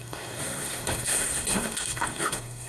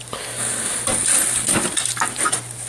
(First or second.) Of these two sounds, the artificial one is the first